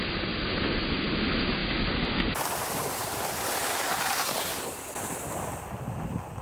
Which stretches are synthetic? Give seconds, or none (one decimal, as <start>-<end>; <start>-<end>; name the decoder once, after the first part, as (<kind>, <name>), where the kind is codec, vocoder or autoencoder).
3.0-4.8 (vocoder, BigVGAN v2)